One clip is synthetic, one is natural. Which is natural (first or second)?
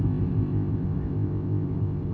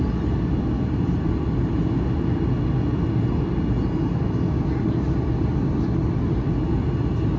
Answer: second